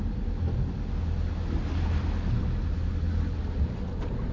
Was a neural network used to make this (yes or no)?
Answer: no